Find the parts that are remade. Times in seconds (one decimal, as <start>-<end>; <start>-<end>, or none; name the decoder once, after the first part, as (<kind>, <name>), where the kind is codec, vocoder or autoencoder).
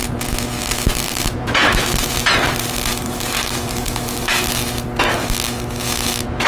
2.9-4.5 (codec, DAC)